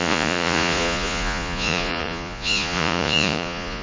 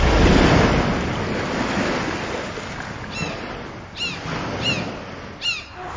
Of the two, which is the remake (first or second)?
first